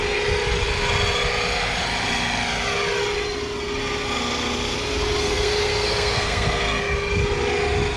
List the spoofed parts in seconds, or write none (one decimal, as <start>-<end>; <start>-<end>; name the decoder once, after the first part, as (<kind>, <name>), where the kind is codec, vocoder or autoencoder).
5.2-6.8 (codec, SNAC)